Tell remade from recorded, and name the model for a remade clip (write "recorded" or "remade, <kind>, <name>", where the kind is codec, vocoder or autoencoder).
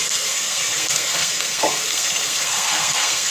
remade, codec, SNAC